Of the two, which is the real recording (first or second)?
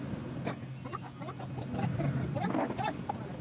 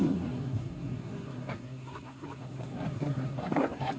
first